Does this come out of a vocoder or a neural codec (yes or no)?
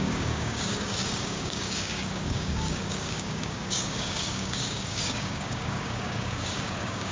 yes